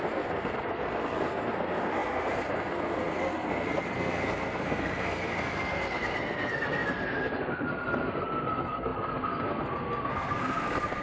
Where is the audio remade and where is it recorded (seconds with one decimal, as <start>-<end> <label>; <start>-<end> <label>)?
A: 0.0-11.0 remade